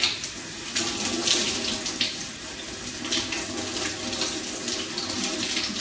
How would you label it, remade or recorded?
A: recorded